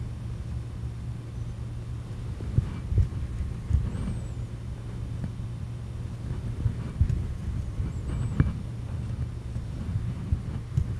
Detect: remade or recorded recorded